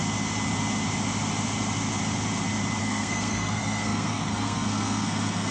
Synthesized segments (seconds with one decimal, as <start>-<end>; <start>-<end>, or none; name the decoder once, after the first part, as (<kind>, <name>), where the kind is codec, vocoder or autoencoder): 2.8-5.5 (codec, SNAC)